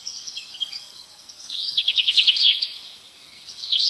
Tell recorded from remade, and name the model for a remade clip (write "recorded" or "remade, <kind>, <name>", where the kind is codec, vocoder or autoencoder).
remade, codec, SNAC